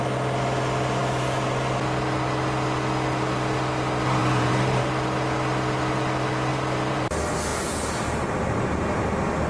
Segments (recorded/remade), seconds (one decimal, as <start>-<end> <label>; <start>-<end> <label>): 0.0-4.2 recorded; 4.2-4.9 remade; 4.9-6.5 recorded; 6.5-7.1 remade; 7.1-9.5 recorded